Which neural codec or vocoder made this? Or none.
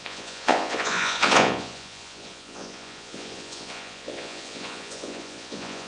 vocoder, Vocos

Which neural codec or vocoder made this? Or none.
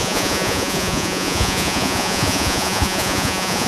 vocoder, Vocos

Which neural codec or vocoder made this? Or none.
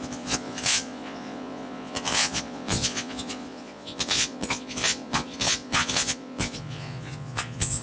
vocoder, Vocos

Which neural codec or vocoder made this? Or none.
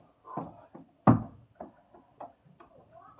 none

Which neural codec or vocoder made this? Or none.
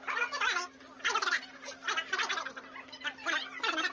none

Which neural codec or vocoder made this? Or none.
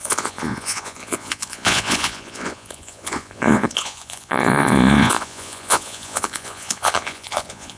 vocoder, Vocos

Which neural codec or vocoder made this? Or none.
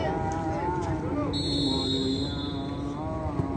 none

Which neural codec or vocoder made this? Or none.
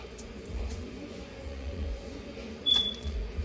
vocoder, Vocos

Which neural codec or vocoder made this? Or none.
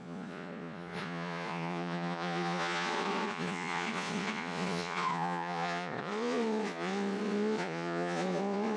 vocoder, Vocos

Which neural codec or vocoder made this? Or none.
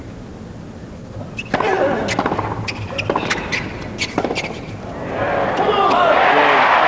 none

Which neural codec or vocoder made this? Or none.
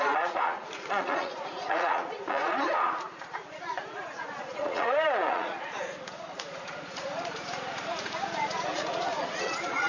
vocoder, Vocos